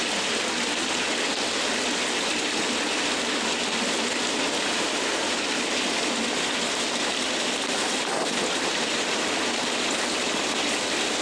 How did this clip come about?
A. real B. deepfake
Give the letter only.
A